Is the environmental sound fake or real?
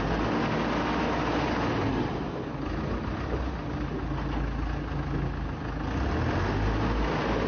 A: real